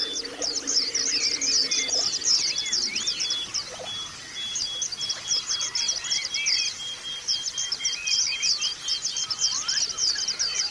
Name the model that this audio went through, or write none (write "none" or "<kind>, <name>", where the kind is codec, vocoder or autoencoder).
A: none